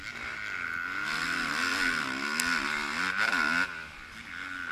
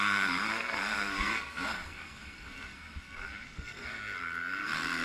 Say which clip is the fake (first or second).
second